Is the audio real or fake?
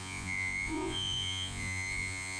fake